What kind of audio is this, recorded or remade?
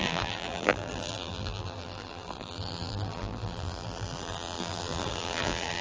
remade